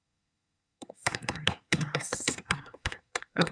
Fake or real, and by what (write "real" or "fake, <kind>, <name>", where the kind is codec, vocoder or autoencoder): fake, codec, SNAC